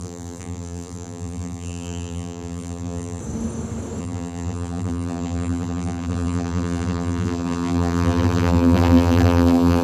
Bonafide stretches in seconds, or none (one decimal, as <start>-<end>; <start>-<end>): 3.2-4.0